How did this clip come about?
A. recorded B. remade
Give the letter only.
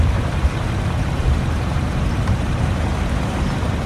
B